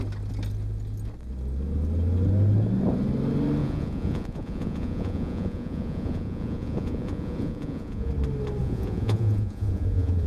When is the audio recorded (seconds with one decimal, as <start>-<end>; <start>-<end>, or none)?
0.0-3.6; 8.1-8.6